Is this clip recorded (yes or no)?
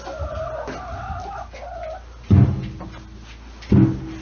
yes